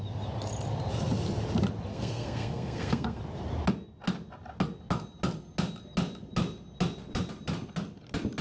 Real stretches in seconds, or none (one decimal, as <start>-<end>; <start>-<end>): 0.0-1.9; 3.2-8.4